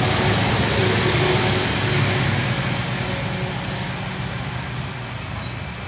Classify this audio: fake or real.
real